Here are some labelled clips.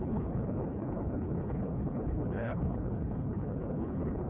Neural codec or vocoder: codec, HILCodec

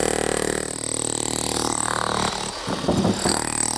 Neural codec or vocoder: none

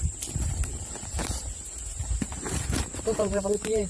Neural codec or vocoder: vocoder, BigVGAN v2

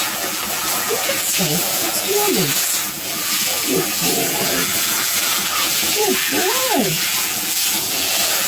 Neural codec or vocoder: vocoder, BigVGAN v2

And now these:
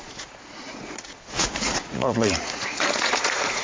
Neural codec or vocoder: vocoder, Vocos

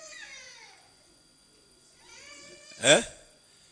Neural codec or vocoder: vocoder, Vocos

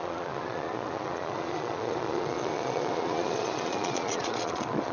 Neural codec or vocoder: vocoder, Vocos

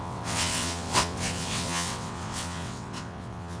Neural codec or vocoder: vocoder, WaveNeXt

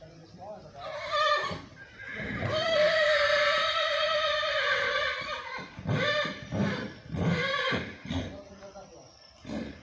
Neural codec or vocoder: vocoder, BigVGAN v2